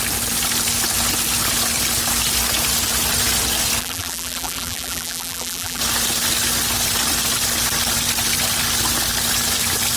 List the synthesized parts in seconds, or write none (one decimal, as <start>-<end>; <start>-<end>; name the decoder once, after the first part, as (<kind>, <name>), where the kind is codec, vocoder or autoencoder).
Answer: 3.8-5.8 (vocoder, BigVGAN v2)